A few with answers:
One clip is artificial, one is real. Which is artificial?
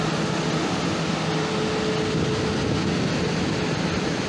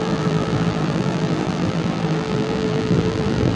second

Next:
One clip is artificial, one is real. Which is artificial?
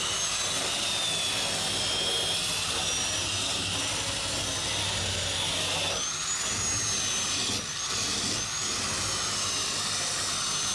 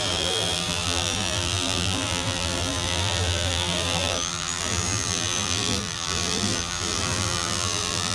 second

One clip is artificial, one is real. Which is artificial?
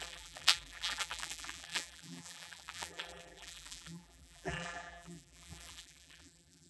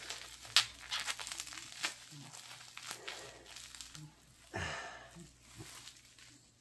first